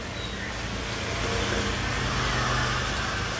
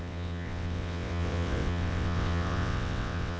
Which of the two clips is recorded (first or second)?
first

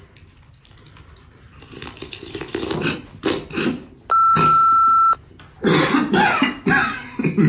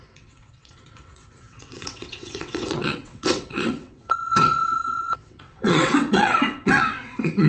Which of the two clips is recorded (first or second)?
first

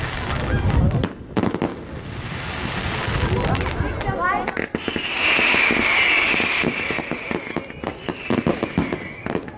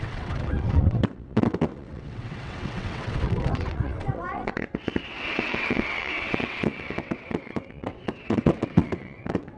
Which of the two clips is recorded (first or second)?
first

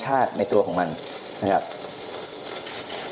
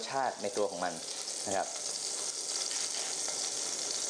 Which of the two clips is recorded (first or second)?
second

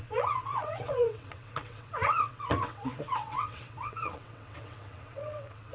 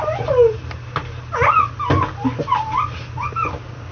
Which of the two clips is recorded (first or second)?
second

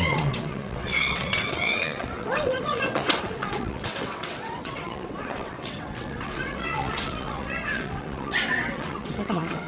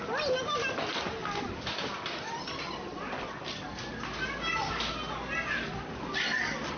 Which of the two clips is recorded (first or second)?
second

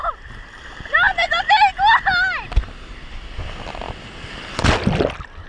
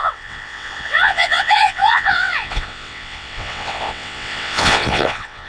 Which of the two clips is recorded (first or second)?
first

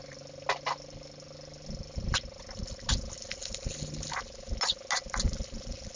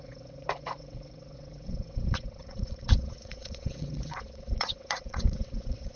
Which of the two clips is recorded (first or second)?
first